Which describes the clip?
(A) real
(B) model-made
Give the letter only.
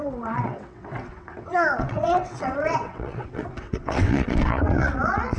B